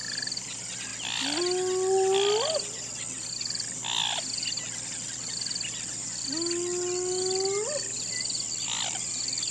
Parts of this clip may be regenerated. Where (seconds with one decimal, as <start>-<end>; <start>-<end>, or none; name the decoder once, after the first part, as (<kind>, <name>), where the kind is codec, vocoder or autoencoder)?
none